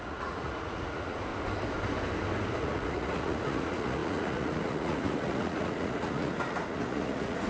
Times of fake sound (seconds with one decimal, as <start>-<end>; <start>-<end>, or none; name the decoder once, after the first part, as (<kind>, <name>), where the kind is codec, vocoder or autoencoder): 0.0-1.3 (vocoder, Vocos); 2.6-7.5